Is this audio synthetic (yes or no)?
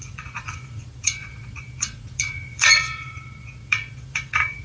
yes